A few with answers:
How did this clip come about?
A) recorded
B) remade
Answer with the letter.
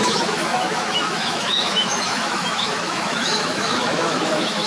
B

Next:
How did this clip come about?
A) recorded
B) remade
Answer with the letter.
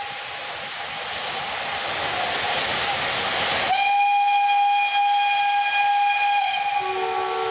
A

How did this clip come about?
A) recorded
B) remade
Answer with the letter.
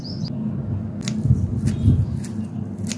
A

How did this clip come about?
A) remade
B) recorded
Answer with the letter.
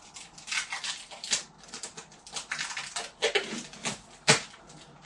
B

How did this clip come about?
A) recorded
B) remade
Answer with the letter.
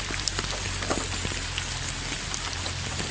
A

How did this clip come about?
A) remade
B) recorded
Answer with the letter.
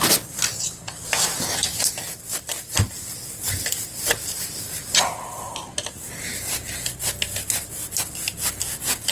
B